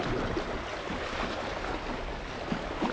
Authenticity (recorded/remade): recorded